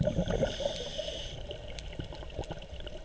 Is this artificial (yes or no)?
no